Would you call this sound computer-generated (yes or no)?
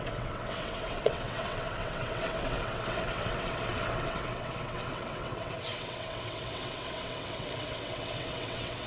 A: yes